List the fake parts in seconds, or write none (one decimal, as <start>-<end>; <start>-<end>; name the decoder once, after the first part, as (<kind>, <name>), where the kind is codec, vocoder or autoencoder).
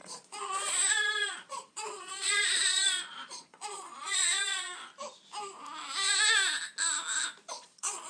0.0-4.9 (vocoder, Vocos); 7.5-8.1